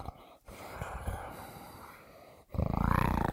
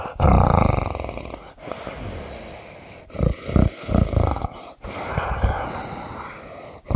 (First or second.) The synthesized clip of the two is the first